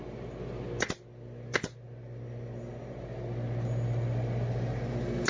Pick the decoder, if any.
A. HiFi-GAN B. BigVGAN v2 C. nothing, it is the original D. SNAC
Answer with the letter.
C